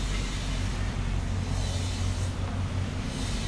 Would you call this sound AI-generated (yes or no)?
no